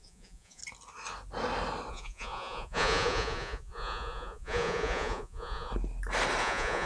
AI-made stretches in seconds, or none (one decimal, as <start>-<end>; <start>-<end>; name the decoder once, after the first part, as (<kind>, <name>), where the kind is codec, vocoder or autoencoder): 0.0-0.6 (vocoder, Vocos); 1.9-5.7; 6.4-6.9